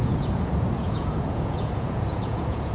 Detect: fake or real fake